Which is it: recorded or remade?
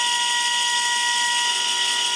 recorded